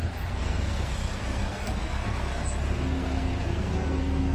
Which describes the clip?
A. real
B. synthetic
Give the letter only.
B